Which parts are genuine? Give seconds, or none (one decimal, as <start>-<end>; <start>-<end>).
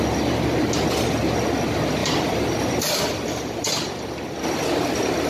0.0-2.0